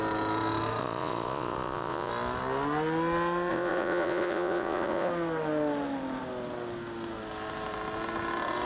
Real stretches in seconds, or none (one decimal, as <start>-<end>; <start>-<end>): 0.0-0.8; 2.1-3.5; 5.1-8.7